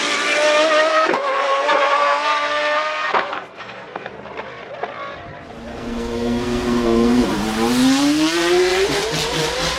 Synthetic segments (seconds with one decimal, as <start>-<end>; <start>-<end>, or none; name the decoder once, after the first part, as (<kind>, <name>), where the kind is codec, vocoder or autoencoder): 0.9-4.1 (codec, SNAC); 5.7-7.3